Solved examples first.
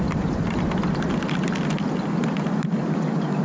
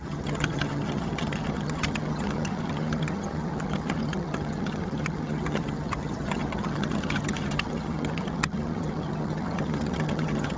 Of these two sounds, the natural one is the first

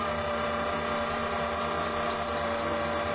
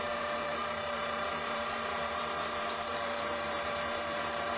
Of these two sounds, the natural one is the first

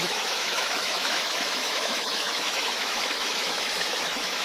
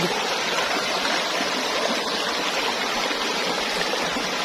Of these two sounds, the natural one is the second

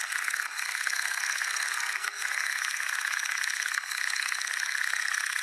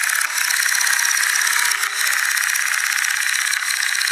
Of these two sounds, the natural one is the second